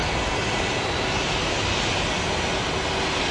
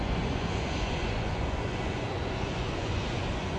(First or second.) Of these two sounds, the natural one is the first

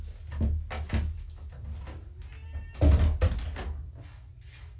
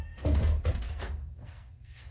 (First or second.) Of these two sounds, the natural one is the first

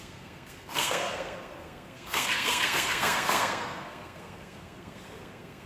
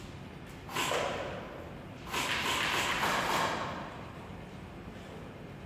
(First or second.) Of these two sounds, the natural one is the second